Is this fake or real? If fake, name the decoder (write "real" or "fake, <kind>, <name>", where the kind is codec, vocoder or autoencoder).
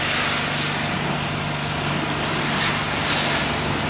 real